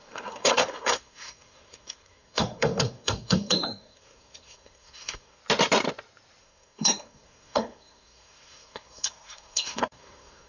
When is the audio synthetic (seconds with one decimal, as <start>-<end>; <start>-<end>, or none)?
0.0-5.4; 6.4-10.5